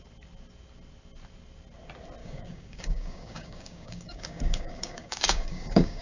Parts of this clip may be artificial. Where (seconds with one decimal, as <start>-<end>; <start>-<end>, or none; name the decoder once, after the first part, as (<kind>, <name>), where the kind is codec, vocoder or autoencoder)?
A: 2.2-6.0 (codec, DAC)